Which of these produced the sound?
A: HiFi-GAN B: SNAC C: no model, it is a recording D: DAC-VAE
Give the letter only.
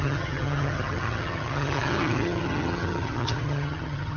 A